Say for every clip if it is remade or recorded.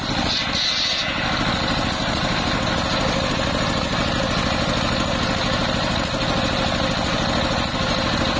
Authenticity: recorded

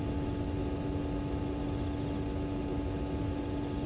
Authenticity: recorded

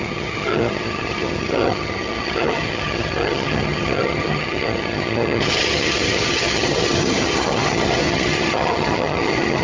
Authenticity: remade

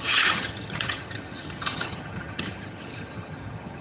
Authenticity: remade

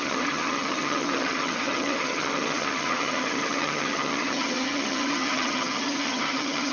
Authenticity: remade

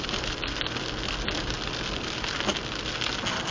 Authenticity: recorded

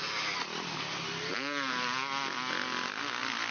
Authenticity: recorded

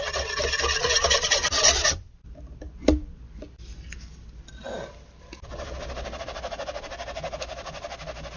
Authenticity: recorded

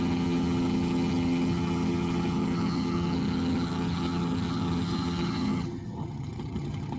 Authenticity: remade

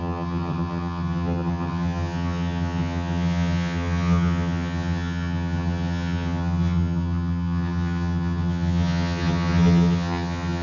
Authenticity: remade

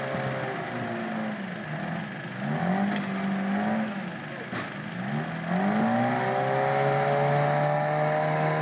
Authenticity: recorded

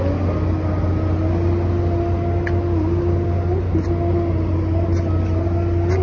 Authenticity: recorded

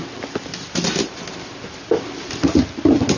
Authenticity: recorded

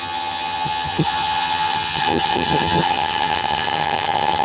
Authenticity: remade